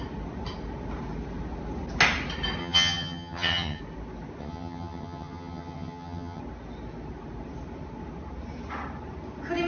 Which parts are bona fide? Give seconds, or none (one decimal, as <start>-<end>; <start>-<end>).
0.0-2.6; 3.8-4.4; 6.4-9.7